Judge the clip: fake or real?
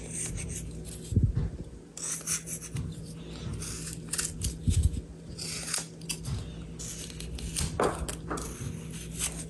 real